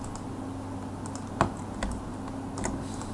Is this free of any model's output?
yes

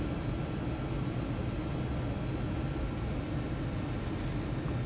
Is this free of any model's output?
yes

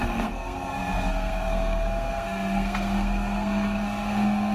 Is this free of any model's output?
no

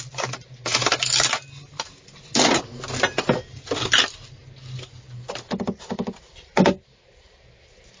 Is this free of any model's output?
yes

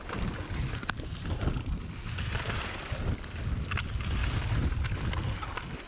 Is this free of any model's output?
yes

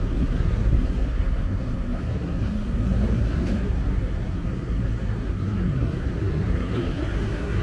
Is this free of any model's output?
no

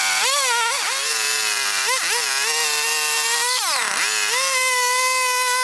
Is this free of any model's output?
yes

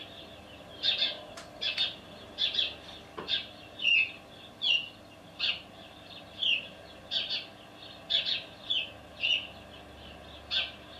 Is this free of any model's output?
yes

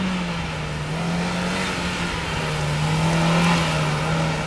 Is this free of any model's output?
yes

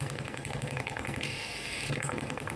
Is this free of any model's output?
no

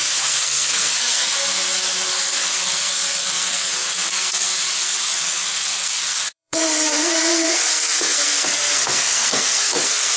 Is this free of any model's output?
no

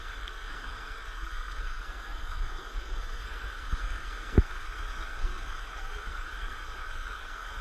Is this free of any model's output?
no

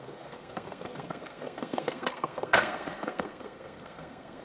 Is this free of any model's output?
no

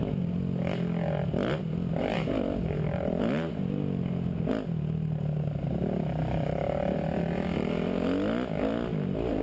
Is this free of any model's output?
yes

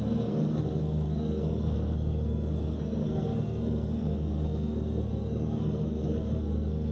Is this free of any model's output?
no